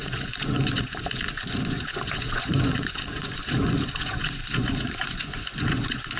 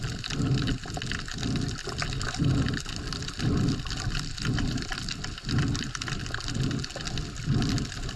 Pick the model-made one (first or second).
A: first